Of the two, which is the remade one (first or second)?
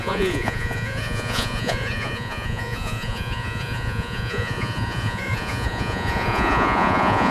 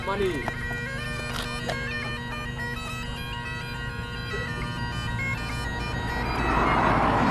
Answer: first